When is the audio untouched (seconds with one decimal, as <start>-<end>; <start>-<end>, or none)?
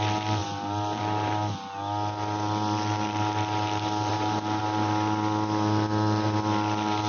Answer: 0.0-0.4; 1.0-4.1; 4.6-7.1